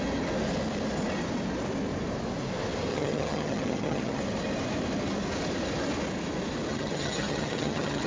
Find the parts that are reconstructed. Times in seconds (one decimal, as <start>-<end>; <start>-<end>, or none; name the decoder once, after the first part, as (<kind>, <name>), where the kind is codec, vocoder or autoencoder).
2.9-4.2 (vocoder, HiFi-GAN); 6.7-8.1